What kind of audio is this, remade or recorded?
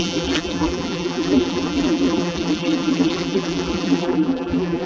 remade